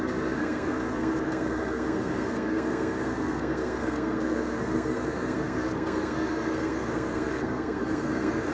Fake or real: fake